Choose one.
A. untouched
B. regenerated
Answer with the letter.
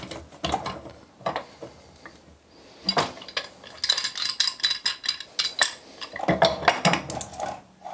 A